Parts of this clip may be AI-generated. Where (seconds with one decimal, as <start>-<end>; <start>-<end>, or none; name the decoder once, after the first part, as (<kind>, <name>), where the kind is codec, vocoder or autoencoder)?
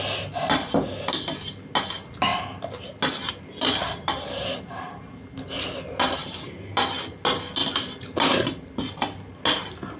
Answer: none